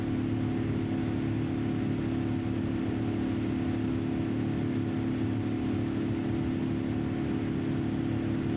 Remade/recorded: recorded